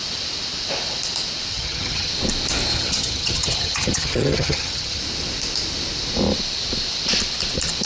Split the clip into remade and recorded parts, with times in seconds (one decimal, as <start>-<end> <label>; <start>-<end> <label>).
0.0-1.5 recorded; 1.5-2.1 remade; 2.1-2.7 recorded; 2.7-5.0 remade; 5.0-7.9 recorded